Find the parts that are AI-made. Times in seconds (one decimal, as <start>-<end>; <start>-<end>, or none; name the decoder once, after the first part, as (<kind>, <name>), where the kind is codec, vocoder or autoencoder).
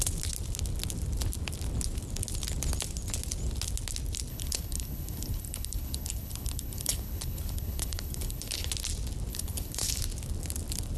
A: 4.3-8.7 (codec, HILCodec); 9.3-10.0